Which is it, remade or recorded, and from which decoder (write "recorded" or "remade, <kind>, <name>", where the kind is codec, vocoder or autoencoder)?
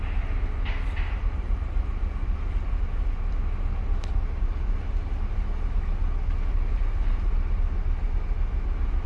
recorded